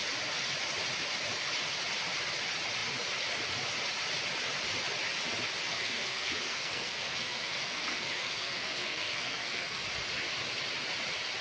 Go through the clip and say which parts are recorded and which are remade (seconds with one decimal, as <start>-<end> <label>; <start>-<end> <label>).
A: 0.0-5.7 recorded; 5.7-9.8 remade; 9.8-11.4 recorded